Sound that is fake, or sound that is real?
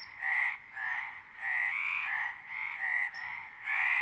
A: fake